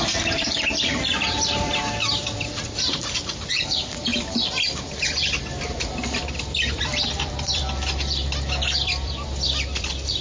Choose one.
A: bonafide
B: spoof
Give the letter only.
B